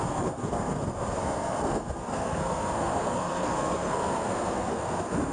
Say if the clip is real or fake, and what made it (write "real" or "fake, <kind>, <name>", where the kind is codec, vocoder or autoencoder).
fake, codec, SNAC